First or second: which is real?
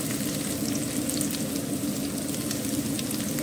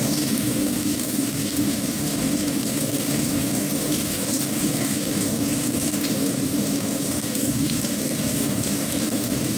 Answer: first